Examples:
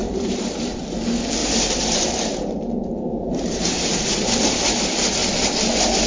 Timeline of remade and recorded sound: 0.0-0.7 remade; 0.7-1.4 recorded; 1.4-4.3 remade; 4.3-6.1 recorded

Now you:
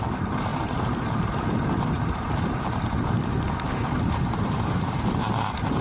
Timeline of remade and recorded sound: 0.0-5.8 remade

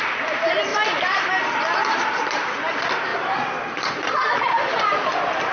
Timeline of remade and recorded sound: 0.0-0.7 recorded; 0.7-1.3 remade; 1.3-3.1 recorded; 3.1-5.5 remade

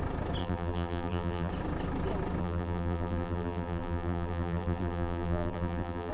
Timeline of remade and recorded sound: 0.0-0.4 recorded; 0.4-1.5 remade; 1.5-2.4 recorded; 2.4-6.1 remade